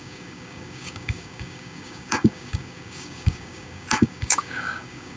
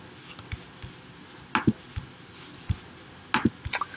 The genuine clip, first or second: second